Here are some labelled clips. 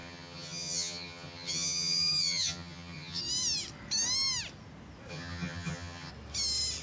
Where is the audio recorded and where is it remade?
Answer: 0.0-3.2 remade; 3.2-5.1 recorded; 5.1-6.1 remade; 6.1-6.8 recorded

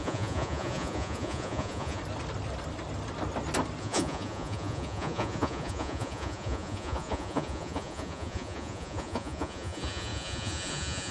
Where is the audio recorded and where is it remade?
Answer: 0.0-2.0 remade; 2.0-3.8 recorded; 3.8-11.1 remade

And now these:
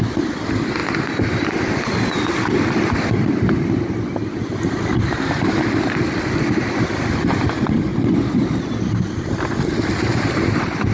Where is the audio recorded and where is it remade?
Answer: 0.0-10.9 recorded